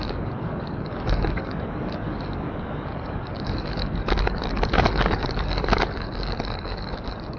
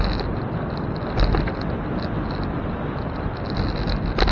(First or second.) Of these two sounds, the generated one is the first